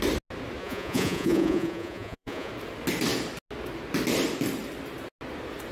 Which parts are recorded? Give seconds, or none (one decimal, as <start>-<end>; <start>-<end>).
0.0-0.6; 2.5-5.7